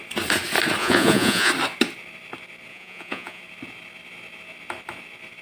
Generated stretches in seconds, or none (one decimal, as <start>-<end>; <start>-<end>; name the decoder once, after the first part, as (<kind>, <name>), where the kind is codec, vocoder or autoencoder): 0.8-1.5 (vocoder, Vocos); 2.7-3.4